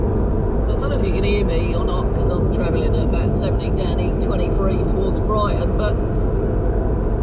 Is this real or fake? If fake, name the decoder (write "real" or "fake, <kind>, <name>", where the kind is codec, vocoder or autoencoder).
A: real